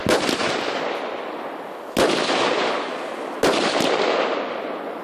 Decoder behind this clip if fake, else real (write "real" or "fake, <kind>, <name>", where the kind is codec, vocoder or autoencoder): real